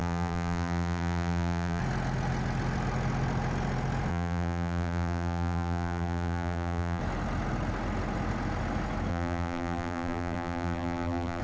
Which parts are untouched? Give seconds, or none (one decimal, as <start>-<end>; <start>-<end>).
1.8-4.1; 7.0-9.1